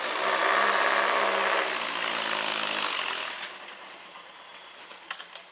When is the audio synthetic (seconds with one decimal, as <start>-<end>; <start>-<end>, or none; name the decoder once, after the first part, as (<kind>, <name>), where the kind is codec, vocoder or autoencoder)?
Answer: none